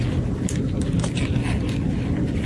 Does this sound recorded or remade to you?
recorded